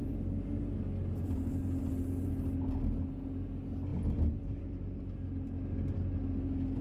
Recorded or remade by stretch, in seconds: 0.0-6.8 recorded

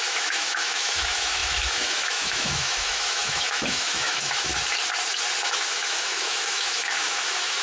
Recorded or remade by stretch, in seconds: 0.0-4.5 remade; 4.5-5.4 recorded; 5.4-7.6 remade

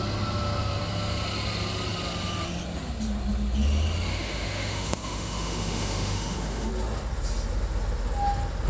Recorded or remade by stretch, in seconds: 0.0-4.1 recorded; 4.1-6.7 remade; 6.7-8.7 recorded

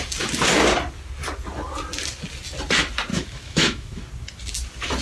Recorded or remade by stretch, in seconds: 0.0-3.1 recorded; 3.1-4.0 remade; 4.0-5.0 recorded

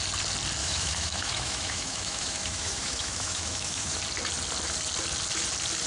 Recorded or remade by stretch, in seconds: 0.0-0.6 recorded; 0.6-4.0 remade; 4.0-5.9 recorded

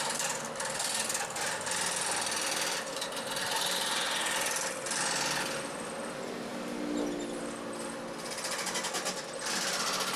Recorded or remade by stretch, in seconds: 0.0-10.2 recorded